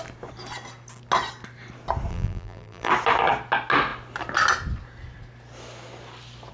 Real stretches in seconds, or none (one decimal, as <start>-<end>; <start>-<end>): 0.0-2.1; 2.9-6.5